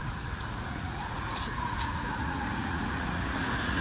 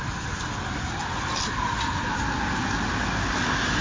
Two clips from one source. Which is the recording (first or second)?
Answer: second